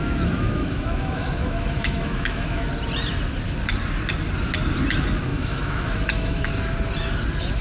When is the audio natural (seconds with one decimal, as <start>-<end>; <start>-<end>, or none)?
2.7-5.3; 6.5-7.6

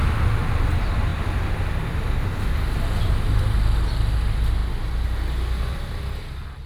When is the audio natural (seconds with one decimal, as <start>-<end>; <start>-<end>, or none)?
0.0-6.7

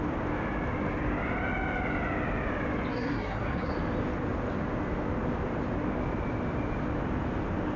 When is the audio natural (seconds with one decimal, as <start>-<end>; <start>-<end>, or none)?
0.0-2.9; 3.7-7.8

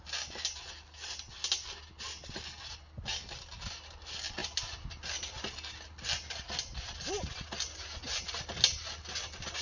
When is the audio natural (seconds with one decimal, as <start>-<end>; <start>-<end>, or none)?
0.0-9.6

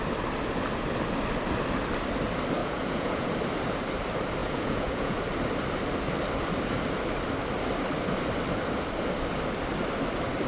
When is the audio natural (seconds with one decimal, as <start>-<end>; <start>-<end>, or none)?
0.0-2.6; 3.3-4.4; 5.2-10.5

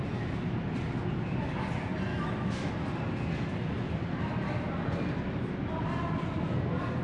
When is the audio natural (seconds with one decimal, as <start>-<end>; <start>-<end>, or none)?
0.0-2.1; 2.7-7.0